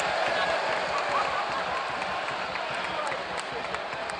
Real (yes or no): yes